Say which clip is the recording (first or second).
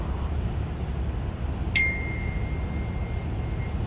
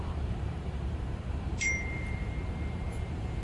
first